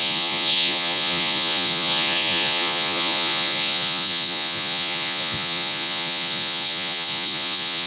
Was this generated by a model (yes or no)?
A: yes